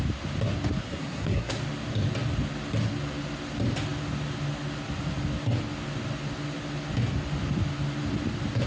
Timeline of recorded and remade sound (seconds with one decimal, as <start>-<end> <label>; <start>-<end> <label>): 0.0-0.8 recorded; 0.8-1.6 remade; 1.6-8.7 recorded